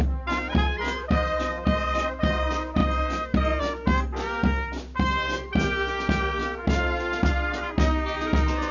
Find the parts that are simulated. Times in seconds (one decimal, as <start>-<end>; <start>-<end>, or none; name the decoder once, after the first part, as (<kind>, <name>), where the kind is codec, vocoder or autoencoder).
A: none